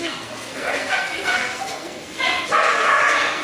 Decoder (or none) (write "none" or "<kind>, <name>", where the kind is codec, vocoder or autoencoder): codec, SNAC